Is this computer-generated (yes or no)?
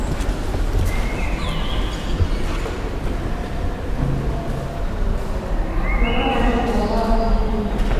no